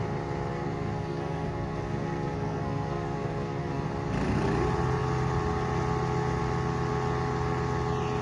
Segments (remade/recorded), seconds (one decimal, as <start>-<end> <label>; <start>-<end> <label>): 0.0-0.5 recorded; 0.5-3.9 remade; 3.9-8.2 recorded